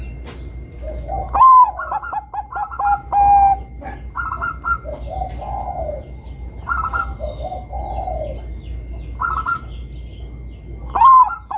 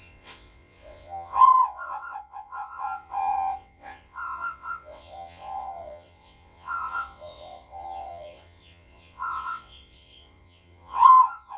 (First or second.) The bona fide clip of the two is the first